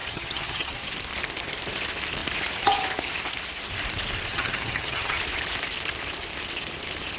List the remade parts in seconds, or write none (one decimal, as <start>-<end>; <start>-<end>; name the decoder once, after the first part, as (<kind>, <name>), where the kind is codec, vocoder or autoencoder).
0.0-0.7 (vocoder, HiFi-GAN); 4.3-5.2